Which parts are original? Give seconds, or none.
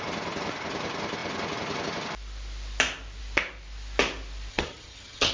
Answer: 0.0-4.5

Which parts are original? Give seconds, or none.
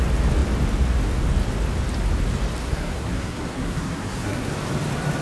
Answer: 0.0-2.6; 4.5-5.2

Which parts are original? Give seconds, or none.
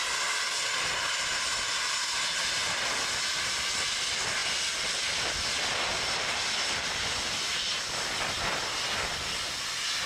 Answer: 0.0-10.1